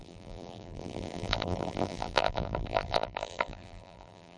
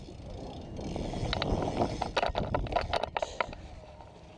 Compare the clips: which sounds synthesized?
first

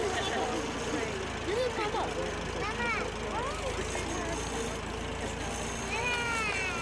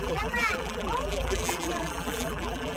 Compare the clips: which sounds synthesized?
second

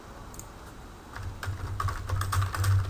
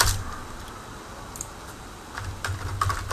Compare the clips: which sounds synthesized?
second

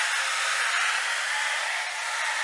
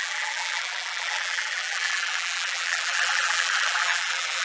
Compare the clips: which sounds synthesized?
second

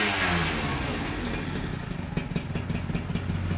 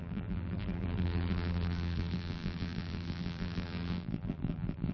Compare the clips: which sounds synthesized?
second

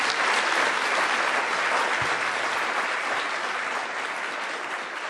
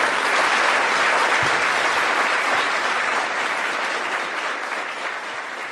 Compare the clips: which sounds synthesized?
second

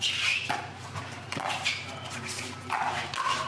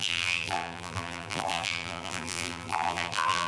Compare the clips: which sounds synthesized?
second